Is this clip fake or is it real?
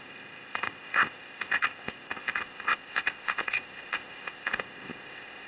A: fake